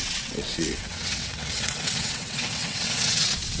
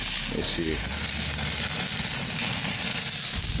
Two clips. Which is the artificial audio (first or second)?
first